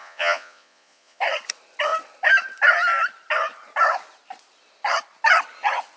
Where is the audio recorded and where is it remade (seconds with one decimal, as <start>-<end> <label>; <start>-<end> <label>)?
0.0-1.2 remade; 1.2-6.0 recorded